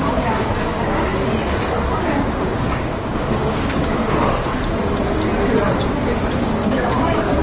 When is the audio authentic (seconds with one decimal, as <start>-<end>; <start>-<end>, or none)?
1.1-2.0; 4.0-6.3